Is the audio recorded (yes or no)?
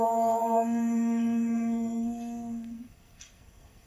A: no